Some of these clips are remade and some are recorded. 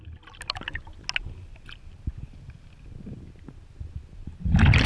recorded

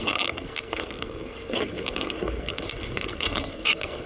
remade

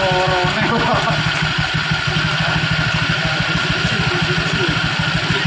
recorded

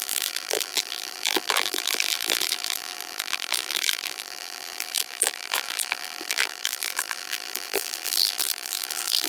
remade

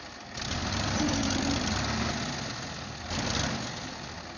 recorded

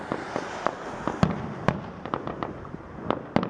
recorded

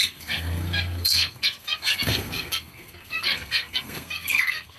remade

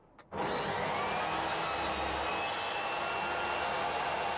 recorded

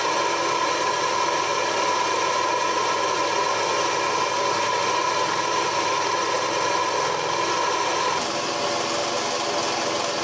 recorded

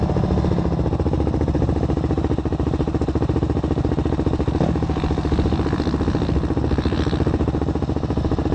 recorded